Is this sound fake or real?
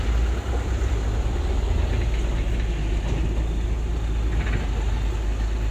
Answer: real